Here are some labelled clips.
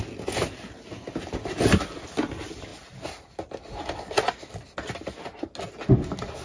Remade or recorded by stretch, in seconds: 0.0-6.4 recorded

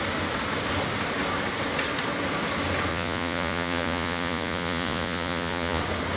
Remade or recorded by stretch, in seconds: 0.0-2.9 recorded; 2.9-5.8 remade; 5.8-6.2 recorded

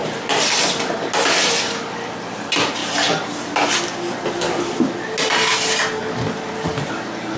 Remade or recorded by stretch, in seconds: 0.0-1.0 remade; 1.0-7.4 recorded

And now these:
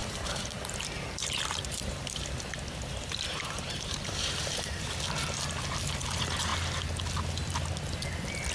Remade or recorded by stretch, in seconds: 0.0-4.9 remade; 4.9-8.5 recorded